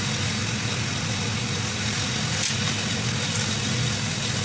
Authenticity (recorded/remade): recorded